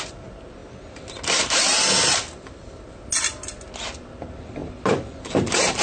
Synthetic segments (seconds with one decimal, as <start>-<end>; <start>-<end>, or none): 4.6-5.8

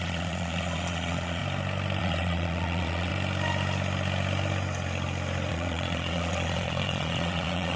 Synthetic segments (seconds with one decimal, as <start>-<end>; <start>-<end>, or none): 0.0-1.4; 2.0-3.1; 5.5-7.8

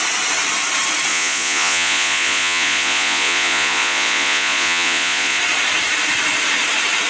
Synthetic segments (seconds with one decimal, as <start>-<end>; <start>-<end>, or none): 1.1-5.4